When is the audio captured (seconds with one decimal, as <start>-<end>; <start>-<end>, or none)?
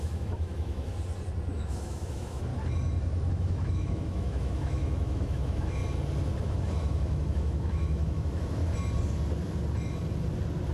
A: 0.9-1.5; 2.5-3.3; 5.8-6.4; 8.6-10.7